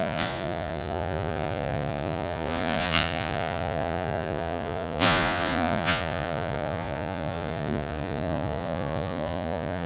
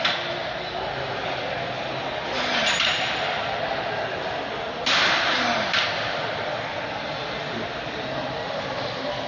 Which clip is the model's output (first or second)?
first